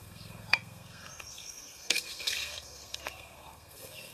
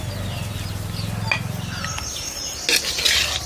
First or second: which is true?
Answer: second